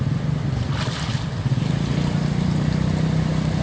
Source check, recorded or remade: recorded